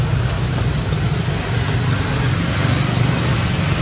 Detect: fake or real real